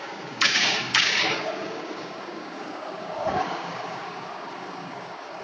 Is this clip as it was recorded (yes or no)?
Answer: no